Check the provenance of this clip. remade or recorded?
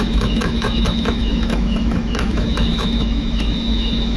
remade